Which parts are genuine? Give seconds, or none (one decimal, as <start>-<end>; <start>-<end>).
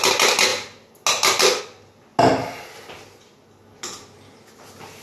0.0-5.0